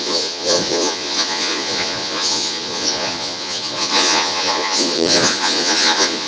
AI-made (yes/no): yes